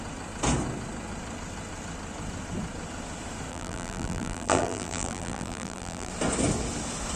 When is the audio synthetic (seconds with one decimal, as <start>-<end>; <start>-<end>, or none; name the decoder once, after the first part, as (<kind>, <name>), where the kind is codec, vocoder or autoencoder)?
3.5-6.1 (vocoder, BigVGAN v2)